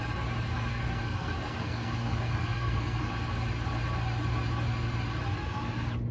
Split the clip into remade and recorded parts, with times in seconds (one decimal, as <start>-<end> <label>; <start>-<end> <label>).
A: 0.0-0.7 recorded; 0.7-3.1 remade; 3.1-6.1 recorded